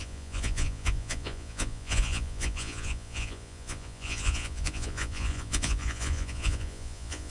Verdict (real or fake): fake